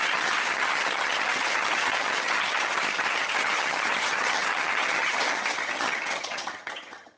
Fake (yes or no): yes